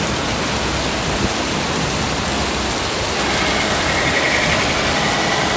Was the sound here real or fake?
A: real